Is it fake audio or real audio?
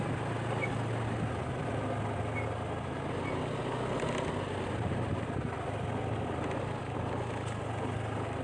real